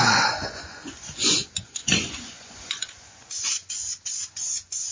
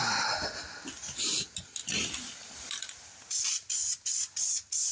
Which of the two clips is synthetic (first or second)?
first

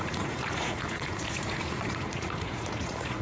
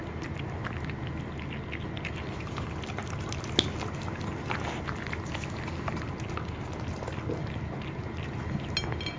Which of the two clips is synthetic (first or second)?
first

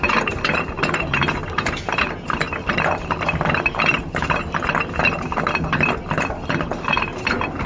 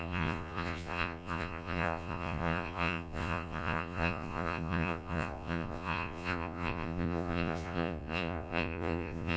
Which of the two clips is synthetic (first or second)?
second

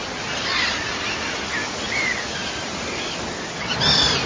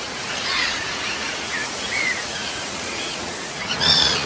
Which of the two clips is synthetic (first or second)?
second